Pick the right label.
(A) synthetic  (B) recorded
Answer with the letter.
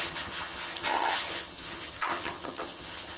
A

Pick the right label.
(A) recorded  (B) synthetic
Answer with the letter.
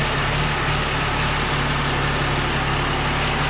A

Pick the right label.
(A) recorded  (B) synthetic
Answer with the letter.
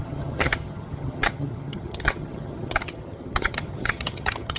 B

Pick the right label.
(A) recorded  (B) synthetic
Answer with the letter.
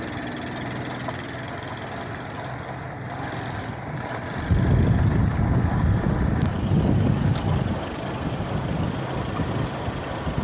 A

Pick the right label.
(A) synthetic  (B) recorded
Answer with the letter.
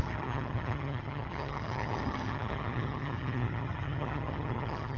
A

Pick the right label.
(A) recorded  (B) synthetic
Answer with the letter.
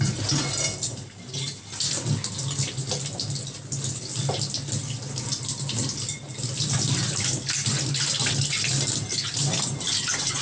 A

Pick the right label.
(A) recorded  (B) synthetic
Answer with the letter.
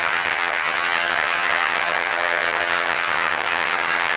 B